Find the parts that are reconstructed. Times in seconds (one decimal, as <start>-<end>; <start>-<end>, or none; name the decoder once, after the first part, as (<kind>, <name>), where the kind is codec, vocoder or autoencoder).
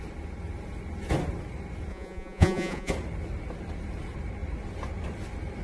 1.9-2.9 (vocoder, Vocos)